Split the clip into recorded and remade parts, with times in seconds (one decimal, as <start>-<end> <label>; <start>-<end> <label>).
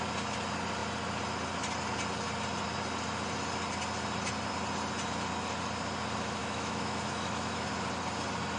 0.0-6.4 recorded; 6.4-7.7 remade; 7.7-8.6 recorded